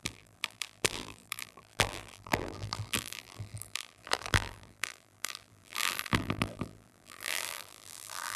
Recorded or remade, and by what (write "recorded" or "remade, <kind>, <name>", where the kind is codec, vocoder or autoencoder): remade, vocoder, BigVGAN v2